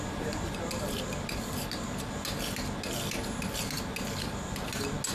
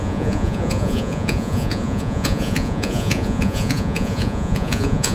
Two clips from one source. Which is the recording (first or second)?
first